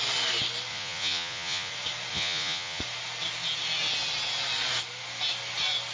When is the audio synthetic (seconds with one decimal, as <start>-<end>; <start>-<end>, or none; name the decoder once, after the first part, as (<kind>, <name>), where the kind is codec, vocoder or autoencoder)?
0.7-1.7 (vocoder, Vocos); 2.1-2.8